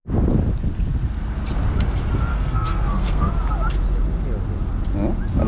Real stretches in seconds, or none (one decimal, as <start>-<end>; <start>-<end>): 0.0-2.3; 3.3-5.5